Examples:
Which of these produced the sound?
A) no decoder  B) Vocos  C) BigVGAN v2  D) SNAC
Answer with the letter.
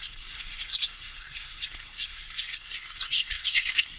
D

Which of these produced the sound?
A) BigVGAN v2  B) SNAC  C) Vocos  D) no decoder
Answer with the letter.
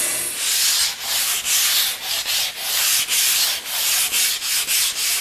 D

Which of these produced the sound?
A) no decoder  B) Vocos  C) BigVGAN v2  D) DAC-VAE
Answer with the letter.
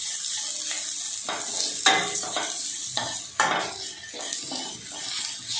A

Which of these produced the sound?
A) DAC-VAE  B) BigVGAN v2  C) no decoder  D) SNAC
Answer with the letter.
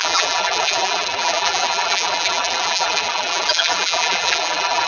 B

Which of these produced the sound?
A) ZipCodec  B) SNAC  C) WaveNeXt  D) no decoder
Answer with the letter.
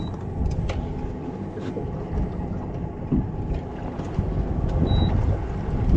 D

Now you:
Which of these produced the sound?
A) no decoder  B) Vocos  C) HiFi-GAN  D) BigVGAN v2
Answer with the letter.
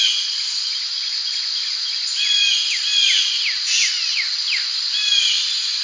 A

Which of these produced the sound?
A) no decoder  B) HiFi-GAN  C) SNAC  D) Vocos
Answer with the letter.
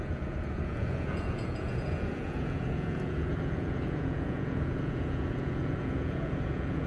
D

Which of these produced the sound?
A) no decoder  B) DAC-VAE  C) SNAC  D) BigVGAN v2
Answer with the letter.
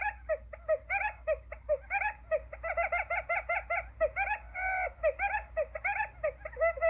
A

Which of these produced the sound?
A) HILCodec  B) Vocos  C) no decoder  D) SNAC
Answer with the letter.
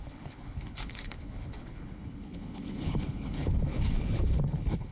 A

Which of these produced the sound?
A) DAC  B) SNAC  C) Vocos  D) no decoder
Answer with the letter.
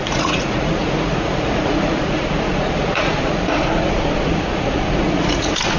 C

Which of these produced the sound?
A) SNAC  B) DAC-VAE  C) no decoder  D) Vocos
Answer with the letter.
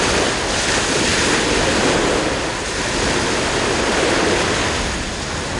C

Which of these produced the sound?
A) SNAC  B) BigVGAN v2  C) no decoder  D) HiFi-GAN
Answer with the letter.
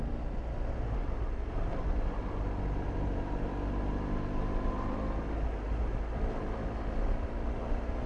C